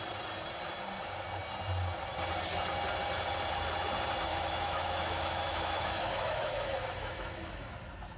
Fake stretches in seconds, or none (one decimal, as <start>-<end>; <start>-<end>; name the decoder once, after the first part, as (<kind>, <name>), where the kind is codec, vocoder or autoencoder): 4.3-7.7 (autoencoder, DAC-VAE)